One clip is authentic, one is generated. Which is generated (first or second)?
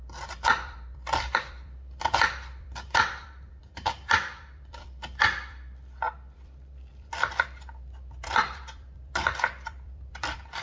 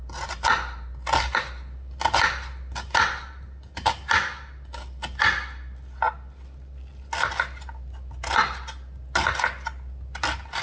first